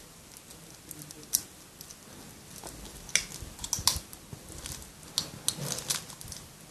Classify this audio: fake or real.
real